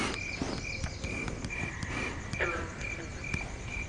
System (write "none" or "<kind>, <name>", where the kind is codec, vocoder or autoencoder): none